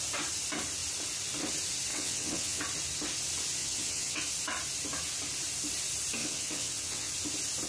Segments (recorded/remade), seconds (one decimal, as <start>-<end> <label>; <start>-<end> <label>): 0.0-1.9 recorded; 1.9-2.6 remade; 2.6-3.6 recorded; 3.6-4.2 remade; 4.2-6.2 recorded; 6.2-7.1 remade; 7.1-7.7 recorded